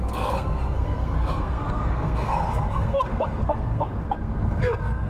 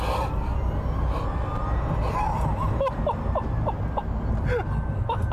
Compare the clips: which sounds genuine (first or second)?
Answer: second